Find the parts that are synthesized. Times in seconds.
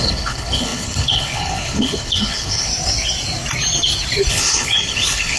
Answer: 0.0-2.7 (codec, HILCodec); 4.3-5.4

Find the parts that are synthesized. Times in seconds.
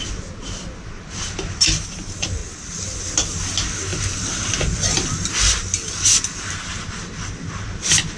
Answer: 2.4-3.0 (vocoder, BigVGAN v2)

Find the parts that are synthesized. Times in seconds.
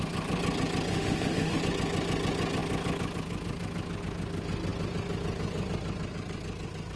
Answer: 0.9-1.6 (autoencoder, DAC-VAE)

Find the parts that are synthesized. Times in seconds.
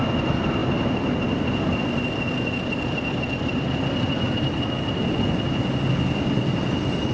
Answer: none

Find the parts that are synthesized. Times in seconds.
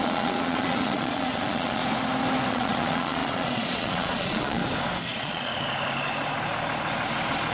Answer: 0.0-1.8 (vocoder, Vocos); 2.5-4.6; 5.1-5.5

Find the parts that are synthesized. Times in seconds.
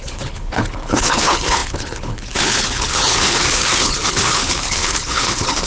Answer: 0.0-5.7 (codec, HILCodec)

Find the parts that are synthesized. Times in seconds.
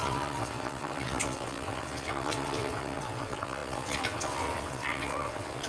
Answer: 0.0-5.7 (vocoder, WaveNeXt)